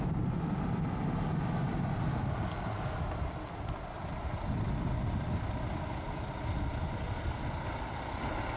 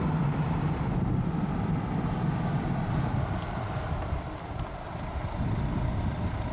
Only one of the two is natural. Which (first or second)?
first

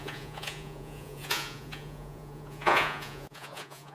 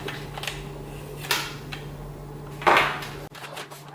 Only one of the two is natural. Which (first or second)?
second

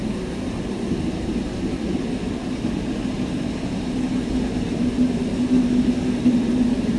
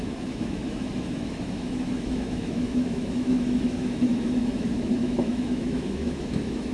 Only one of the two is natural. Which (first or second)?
first